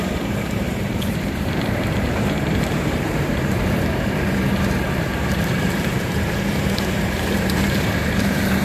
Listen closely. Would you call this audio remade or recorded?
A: remade